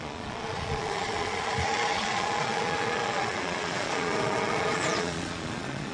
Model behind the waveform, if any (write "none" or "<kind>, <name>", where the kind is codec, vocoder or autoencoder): vocoder, Vocos